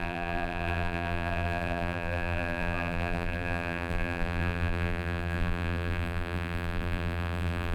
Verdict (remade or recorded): remade